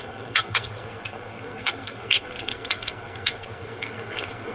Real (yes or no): no